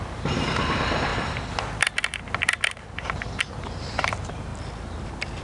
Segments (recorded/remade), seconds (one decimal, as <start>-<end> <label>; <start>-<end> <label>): 0.0-1.1 remade; 1.1-3.5 recorded; 3.5-4.5 remade; 4.5-5.4 recorded